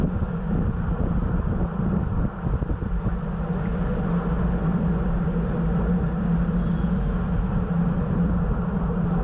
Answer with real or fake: real